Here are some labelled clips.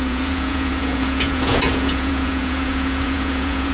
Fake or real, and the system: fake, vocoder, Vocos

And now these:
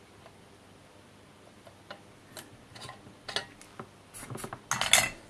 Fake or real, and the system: real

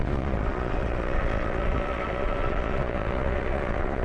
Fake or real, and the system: fake, vocoder, Vocos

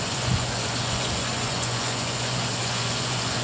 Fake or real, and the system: fake, vocoder, Vocos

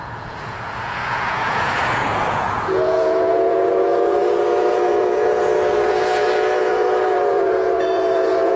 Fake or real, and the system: fake, vocoder, Vocos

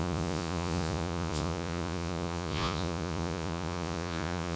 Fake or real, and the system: fake, vocoder, Vocos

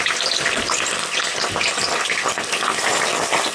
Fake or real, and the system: real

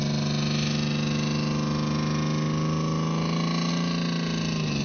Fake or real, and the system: real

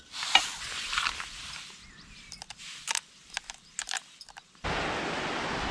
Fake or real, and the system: real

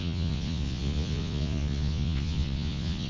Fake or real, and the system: fake, vocoder, Vocos